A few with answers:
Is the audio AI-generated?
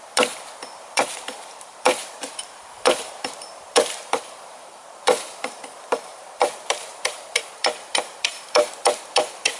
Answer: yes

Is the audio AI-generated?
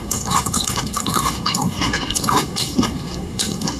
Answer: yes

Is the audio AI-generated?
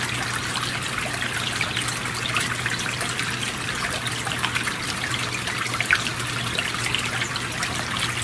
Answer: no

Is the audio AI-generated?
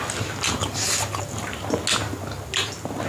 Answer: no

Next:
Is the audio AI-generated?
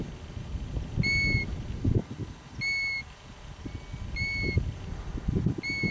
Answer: no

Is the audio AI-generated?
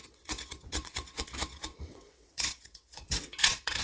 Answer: yes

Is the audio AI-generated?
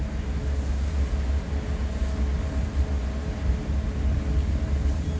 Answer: no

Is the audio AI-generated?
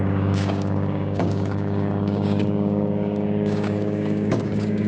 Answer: yes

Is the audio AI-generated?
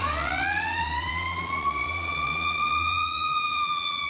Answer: yes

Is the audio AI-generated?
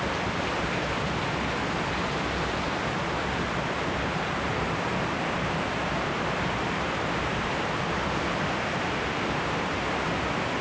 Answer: yes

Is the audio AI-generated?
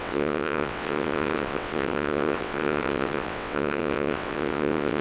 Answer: yes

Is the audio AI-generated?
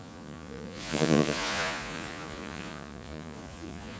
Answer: yes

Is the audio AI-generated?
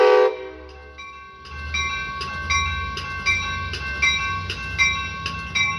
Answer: no